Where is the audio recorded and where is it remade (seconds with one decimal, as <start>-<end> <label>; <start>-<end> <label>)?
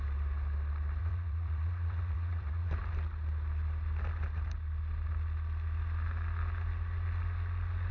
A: 0.0-1.0 recorded; 1.0-2.7 remade; 2.7-7.9 recorded